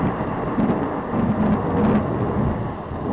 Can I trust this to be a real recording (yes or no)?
yes